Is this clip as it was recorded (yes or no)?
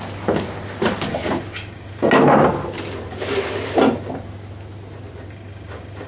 yes